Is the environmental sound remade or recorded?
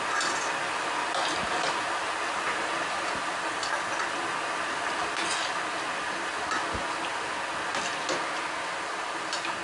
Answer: recorded